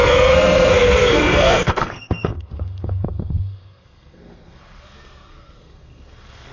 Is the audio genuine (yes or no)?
no